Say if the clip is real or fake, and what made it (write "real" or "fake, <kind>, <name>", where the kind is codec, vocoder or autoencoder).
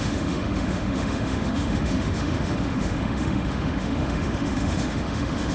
fake, autoencoder, DAC-VAE